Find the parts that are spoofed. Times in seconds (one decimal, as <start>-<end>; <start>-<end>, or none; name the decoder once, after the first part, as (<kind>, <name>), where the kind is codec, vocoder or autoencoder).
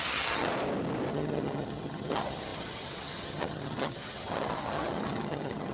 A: 0.0-0.5 (vocoder, HiFi-GAN); 1.1-5.7